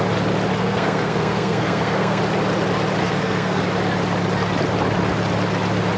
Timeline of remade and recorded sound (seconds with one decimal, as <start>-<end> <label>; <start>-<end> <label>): 0.0-0.6 recorded; 0.6-2.2 remade; 2.2-3.0 recorded; 3.0-3.6 remade; 3.6-6.0 recorded